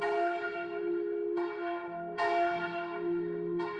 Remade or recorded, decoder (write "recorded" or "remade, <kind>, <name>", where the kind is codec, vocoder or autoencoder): remade, autoencoder, DAC-VAE